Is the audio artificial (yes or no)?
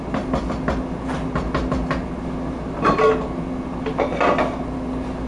no